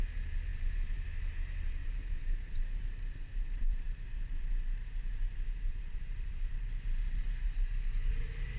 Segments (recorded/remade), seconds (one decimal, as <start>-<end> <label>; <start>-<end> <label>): 0.0-1.8 recorded; 1.8-4.5 remade; 4.5-5.7 recorded; 5.7-8.6 remade